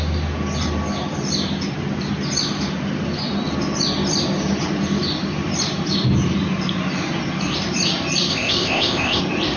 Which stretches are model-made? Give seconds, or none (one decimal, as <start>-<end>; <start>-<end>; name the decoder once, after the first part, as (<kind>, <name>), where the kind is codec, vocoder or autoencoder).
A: 8.3-9.2 (codec, ZipCodec)